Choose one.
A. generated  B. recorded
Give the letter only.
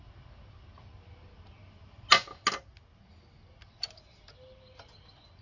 B